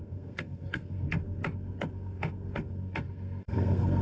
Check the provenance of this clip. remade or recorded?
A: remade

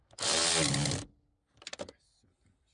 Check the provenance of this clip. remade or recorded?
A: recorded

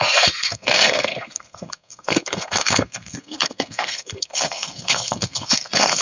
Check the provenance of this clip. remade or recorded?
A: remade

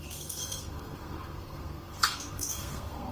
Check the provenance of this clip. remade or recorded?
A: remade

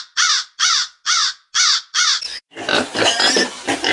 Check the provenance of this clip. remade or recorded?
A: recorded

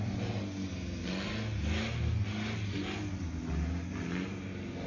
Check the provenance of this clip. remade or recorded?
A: recorded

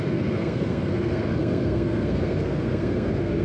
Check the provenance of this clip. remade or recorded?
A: remade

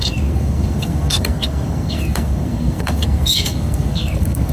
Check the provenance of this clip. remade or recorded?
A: remade